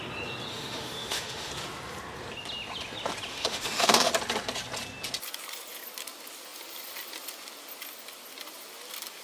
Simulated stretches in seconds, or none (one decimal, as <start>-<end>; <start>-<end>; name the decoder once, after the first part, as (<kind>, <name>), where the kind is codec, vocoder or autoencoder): 0.5-1.5 (autoencoder, DAC-VAE); 3.3-4.1